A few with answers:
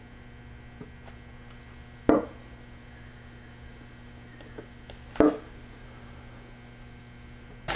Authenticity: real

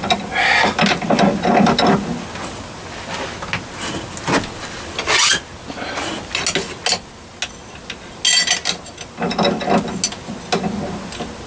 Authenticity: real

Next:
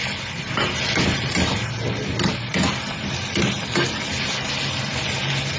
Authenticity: real